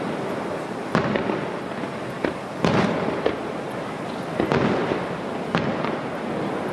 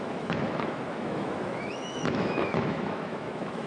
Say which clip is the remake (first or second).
second